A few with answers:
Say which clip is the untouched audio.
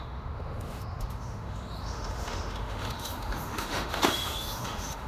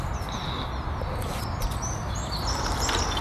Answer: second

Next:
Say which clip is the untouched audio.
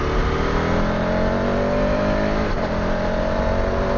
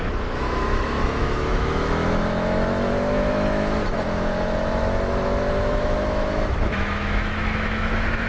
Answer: first